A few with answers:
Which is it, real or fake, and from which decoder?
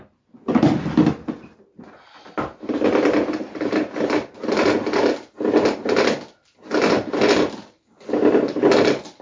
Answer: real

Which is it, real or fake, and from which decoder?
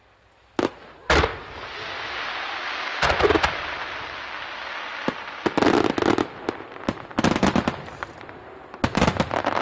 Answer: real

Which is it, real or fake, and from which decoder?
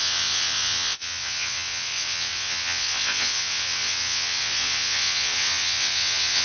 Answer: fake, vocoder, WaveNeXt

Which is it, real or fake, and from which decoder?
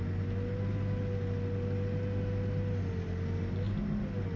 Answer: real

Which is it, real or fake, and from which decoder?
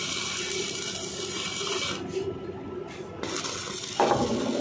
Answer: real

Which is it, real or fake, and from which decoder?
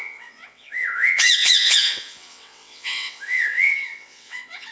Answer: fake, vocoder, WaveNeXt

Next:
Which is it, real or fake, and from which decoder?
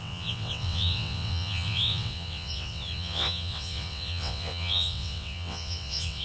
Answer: fake, vocoder, WaveNeXt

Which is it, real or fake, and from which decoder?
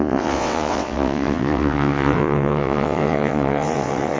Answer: fake, vocoder, WaveNeXt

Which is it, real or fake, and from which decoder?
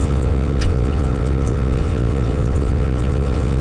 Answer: fake, vocoder, WaveNeXt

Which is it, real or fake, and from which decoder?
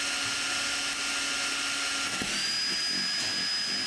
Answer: real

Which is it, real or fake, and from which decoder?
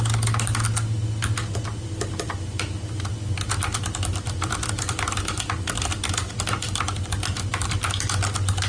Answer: real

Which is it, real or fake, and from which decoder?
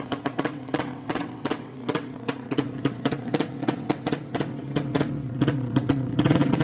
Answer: fake, vocoder, WaveNeXt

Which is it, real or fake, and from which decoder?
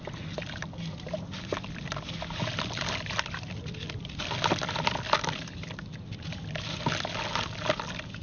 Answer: real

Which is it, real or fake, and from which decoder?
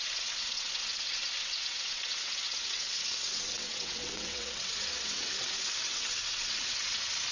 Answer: fake, vocoder, WaveNeXt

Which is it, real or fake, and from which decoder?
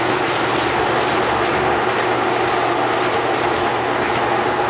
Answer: real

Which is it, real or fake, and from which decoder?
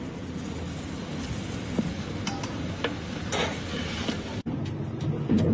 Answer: real